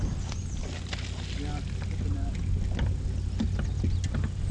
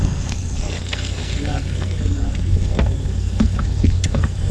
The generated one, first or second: second